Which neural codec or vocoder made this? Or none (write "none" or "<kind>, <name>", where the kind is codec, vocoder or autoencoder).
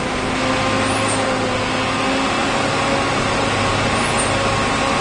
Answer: none